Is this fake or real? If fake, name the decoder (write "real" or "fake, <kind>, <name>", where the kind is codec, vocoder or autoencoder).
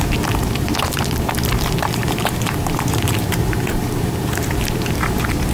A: fake, vocoder, BigVGAN v2